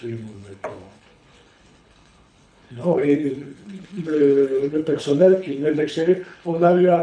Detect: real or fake fake